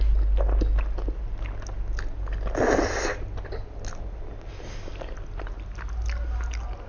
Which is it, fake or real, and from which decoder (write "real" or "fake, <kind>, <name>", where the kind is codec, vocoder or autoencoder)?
real